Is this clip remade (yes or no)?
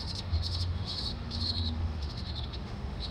yes